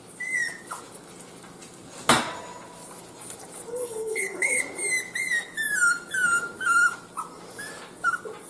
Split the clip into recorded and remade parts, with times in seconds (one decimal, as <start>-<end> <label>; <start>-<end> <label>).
0.0-3.7 recorded; 3.7-4.6 remade; 4.6-8.5 recorded

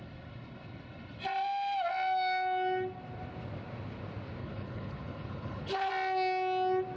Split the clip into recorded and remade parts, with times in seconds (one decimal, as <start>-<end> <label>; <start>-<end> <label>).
0.0-4.4 recorded; 4.4-5.9 remade; 5.9-7.0 recorded

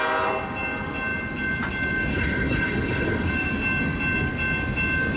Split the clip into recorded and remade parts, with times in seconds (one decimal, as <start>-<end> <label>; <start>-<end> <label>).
0.0-2.1 recorded; 2.1-3.3 remade; 3.3-5.2 recorded

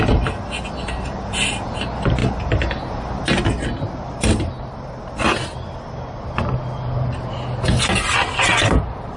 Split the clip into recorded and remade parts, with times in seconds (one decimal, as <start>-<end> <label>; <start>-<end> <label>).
0.0-9.2 recorded

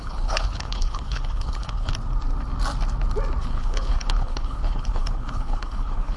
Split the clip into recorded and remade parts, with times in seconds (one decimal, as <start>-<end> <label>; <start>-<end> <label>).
0.0-1.9 remade; 1.9-3.4 recorded; 3.4-6.2 remade

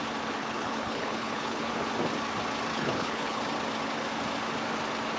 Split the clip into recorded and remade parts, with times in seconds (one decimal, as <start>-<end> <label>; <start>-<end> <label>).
0.0-0.4 recorded; 0.4-1.7 remade; 1.7-2.7 recorded; 2.7-3.4 remade; 3.4-5.2 recorded

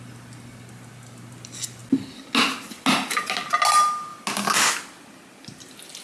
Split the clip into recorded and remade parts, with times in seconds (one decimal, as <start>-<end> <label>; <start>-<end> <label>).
0.0-6.0 recorded

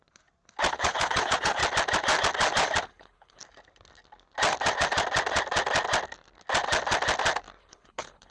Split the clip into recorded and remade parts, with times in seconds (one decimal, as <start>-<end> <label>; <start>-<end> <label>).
0.0-0.7 recorded; 0.7-1.6 remade; 1.6-2.8 recorded; 2.8-3.4 remade; 3.4-7.6 recorded; 7.6-8.3 remade